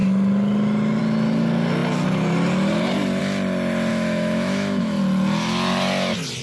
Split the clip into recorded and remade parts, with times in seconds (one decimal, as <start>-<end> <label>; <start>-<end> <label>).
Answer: 0.0-3.9 recorded; 3.9-5.0 remade; 5.0-6.4 recorded